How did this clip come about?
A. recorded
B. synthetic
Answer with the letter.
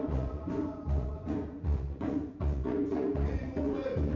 B